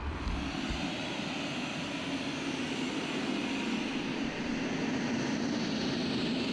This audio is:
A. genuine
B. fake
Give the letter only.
A